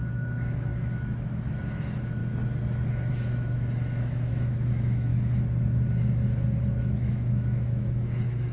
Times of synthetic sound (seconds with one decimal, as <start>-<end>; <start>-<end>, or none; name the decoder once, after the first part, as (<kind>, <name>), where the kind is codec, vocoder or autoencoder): 0.0-2.2 (autoencoder, DAC-VAE); 3.1-5.1; 6.8-8.5